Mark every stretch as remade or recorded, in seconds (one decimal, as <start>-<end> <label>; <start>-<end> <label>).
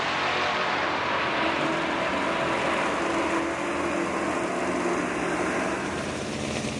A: 0.0-1.7 remade; 1.7-5.0 recorded; 5.0-6.8 remade